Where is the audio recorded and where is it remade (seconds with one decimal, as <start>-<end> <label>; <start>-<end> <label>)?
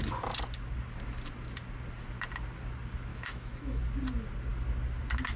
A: 0.0-3.1 recorded; 3.1-3.8 remade; 3.8-5.4 recorded